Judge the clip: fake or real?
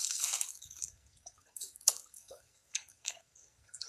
fake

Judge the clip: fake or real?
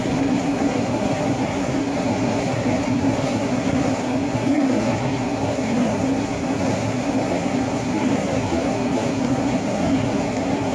fake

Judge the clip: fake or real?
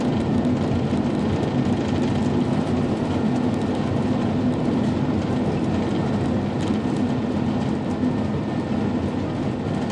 real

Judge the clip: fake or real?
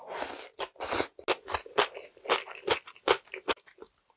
real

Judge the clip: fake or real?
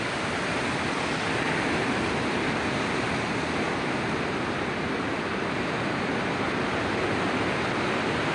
real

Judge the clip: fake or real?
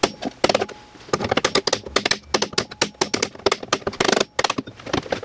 real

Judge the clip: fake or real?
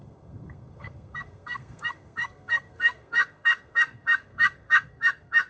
fake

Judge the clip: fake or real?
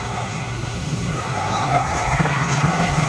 fake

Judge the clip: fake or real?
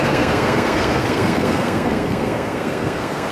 fake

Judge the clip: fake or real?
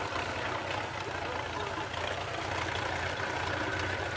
real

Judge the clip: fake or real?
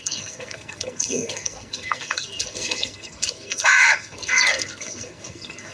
fake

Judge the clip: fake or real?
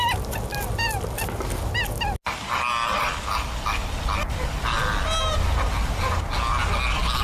real